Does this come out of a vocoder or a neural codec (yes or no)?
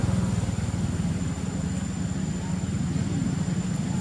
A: no